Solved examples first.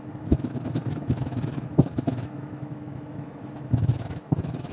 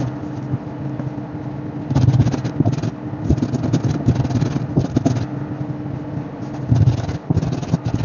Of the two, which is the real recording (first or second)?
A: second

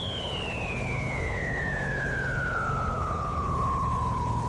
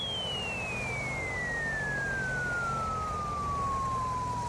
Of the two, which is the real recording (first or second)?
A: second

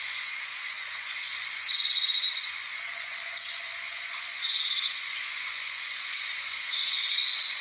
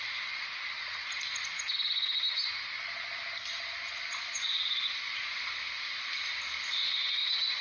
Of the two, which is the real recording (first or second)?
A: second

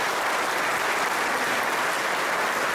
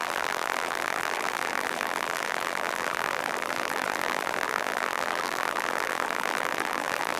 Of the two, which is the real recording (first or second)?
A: first